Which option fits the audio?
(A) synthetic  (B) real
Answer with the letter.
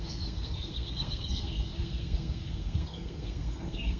A